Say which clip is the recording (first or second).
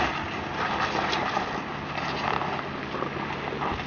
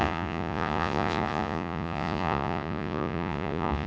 first